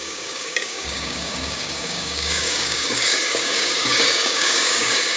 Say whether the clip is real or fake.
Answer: fake